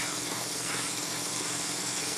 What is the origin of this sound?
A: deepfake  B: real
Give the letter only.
A